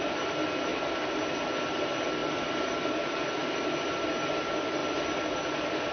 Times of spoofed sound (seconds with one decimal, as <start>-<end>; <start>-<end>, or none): none